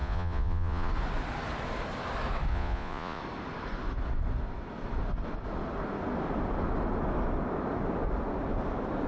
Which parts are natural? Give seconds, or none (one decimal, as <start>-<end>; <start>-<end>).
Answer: 0.9-2.5; 3.2-9.1

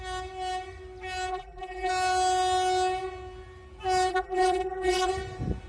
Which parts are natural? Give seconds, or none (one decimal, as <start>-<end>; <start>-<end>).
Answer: 0.0-1.3; 1.9-4.1; 5.1-5.7

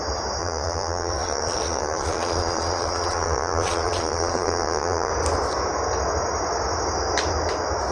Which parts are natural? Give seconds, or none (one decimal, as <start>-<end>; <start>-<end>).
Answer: 0.0-0.4; 5.1-7.9

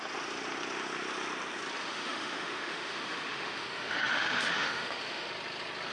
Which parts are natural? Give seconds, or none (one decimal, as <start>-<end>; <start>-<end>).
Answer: 0.0-1.8; 5.3-5.9

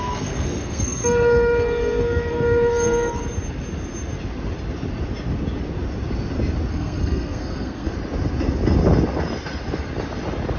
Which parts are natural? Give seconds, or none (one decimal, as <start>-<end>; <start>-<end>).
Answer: 3.2-6.7; 7.9-10.6

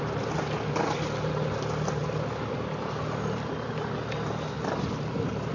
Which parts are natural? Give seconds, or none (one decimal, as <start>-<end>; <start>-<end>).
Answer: 0.0-5.5

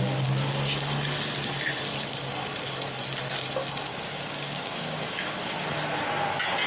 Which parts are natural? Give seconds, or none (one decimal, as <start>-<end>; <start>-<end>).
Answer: 0.0-3.9; 5.4-6.7

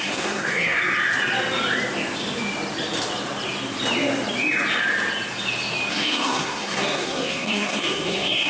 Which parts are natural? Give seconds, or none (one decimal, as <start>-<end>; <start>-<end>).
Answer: 0.8-5.9